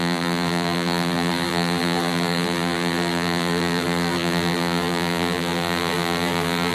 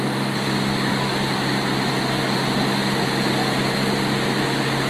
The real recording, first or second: second